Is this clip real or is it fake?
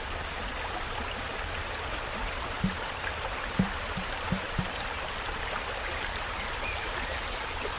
fake